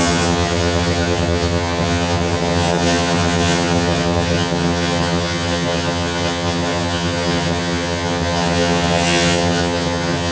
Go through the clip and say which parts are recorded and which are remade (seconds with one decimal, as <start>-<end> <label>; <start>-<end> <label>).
0.0-10.3 remade